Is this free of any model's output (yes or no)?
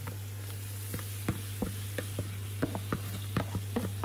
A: yes